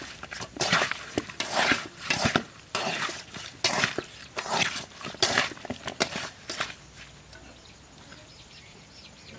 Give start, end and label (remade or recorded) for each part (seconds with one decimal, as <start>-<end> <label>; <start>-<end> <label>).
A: 0.0-3.5 remade; 3.5-8.3 recorded; 8.3-9.4 remade

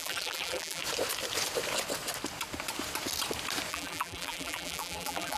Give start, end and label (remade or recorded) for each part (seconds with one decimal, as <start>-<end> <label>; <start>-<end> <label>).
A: 0.0-0.8 remade; 0.8-3.7 recorded; 3.7-5.4 remade

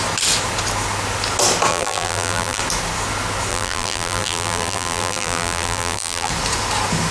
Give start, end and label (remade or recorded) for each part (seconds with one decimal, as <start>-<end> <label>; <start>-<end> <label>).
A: 0.0-1.7 recorded; 1.7-2.6 remade; 2.6-3.5 recorded; 3.5-6.3 remade; 6.3-7.1 recorded

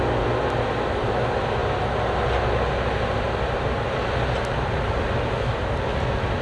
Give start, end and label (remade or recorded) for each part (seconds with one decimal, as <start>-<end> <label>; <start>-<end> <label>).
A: 0.0-6.4 recorded

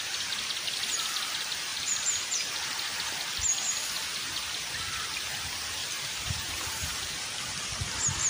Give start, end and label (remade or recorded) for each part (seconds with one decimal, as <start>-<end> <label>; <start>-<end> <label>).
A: 0.0-1.7 recorded; 1.7-2.2 remade; 2.2-5.8 recorded; 5.8-6.9 remade; 6.9-8.3 recorded

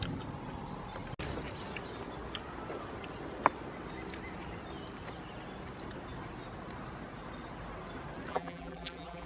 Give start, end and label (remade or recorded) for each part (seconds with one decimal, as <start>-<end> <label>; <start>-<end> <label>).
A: 0.0-8.3 recorded; 8.3-9.3 remade